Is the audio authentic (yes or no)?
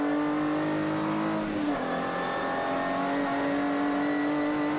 yes